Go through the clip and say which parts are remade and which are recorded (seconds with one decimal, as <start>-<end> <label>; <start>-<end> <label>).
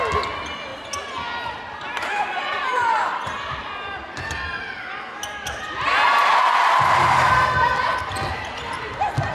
0.0-9.3 recorded